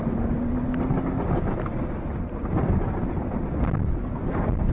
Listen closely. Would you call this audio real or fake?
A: real